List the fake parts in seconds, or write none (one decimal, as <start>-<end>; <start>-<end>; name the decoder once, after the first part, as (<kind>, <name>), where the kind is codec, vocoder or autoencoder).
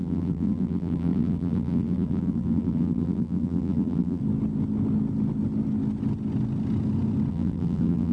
0.0-4.2 (vocoder, BigVGAN v2); 7.3-8.1